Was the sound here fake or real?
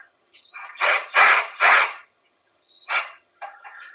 fake